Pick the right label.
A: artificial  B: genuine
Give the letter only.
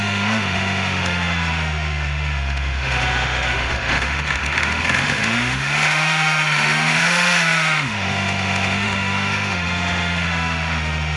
A